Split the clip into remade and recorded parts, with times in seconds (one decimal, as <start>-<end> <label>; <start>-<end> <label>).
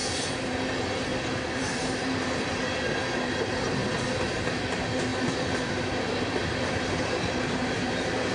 0.0-0.5 remade; 0.5-1.1 recorded; 1.1-2.5 remade; 2.5-3.8 recorded; 3.8-4.6 remade; 4.6-5.1 recorded; 5.1-6.8 remade; 6.8-8.3 recorded